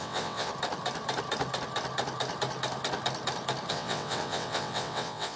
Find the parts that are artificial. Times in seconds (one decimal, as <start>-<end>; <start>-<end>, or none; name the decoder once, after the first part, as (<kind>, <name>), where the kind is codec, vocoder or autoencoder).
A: 0.0-0.5 (vocoder, WaveNeXt); 3.7-5.4